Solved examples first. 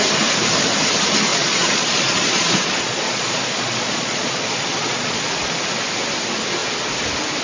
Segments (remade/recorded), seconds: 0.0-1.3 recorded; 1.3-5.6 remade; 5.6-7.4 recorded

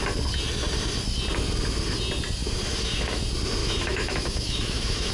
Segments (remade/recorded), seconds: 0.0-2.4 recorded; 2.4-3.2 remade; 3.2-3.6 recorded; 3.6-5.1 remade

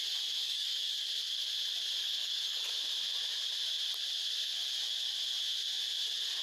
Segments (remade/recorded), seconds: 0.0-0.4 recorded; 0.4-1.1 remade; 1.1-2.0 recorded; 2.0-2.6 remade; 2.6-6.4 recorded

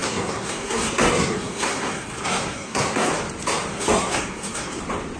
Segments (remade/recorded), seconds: 0.0-3.1 remade; 3.1-3.7 recorded; 3.7-4.8 remade; 4.8-5.2 recorded

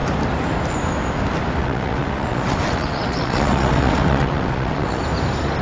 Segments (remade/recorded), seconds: 0.0-1.6 recorded; 1.6-5.0 remade; 5.0-5.6 recorded